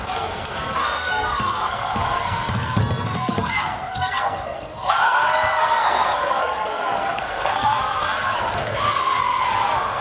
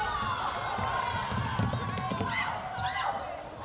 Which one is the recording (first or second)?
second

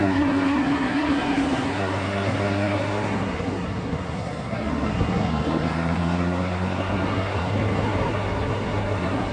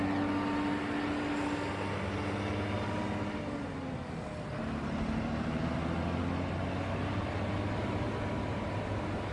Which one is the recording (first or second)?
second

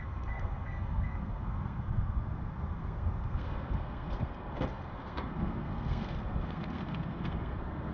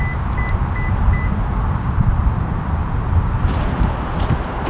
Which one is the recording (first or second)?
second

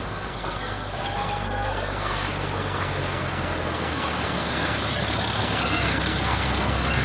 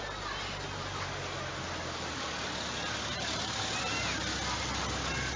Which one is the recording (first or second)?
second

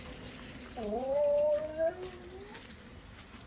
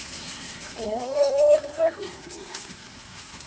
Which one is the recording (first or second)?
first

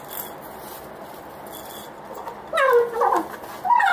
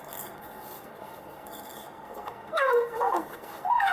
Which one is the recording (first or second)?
first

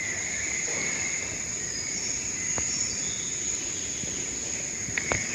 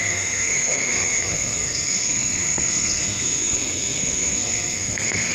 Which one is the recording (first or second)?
first